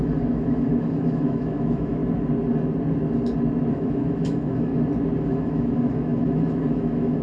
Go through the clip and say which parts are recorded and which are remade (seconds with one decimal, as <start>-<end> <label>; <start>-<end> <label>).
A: 0.0-2.0 remade; 2.0-3.7 recorded; 3.7-4.7 remade; 4.7-5.2 recorded; 5.2-7.2 remade